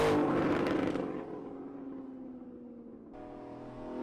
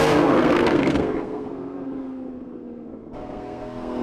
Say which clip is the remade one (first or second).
second